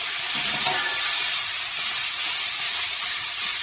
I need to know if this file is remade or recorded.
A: remade